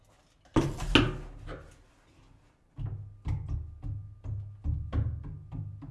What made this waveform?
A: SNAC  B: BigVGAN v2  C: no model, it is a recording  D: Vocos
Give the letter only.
C